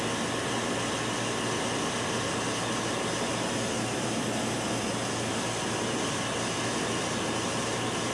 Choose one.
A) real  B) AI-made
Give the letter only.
A